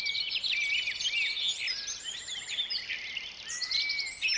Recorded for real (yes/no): yes